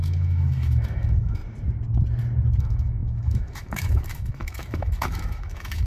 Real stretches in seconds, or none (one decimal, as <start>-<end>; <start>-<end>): 1.4-2.6